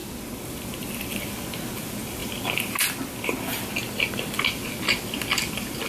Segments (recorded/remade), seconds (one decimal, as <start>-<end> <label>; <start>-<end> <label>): 0.0-5.9 recorded